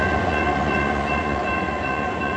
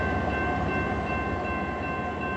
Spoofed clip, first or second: first